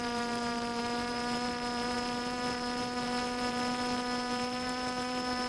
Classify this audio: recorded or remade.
remade